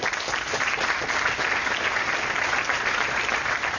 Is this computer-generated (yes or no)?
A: no